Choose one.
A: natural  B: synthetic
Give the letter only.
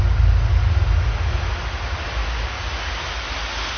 A